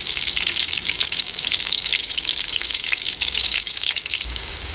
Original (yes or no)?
no